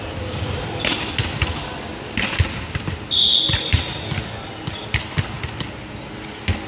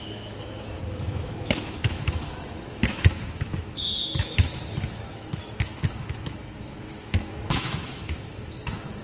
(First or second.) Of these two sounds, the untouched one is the first